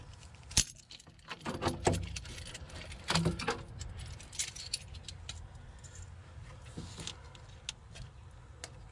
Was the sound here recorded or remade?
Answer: recorded